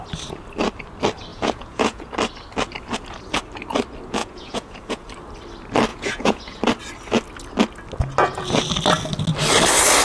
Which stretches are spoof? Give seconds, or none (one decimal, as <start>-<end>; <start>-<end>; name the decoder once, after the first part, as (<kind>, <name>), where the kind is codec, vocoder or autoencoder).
1.3-2.0 (vocoder, Vocos); 4.2-5.1; 5.9-6.6